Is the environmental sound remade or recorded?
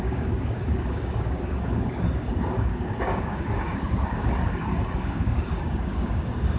remade